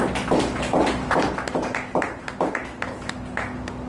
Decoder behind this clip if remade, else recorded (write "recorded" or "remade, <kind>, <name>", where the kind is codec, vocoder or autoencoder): recorded